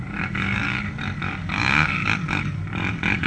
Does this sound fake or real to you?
fake